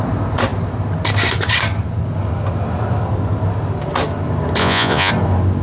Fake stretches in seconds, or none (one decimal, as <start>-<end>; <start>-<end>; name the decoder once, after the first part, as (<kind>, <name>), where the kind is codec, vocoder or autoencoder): 4.6-5.1 (vocoder, Vocos)